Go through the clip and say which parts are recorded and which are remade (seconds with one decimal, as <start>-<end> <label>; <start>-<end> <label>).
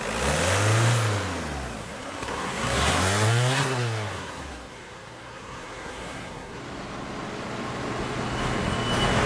0.0-1.8 recorded; 1.8-6.6 remade; 6.6-9.3 recorded